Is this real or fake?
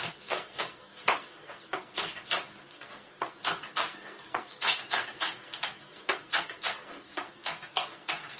fake